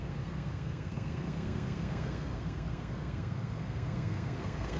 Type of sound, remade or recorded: remade